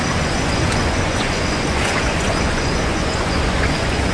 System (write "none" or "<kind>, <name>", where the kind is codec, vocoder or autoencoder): vocoder, Vocos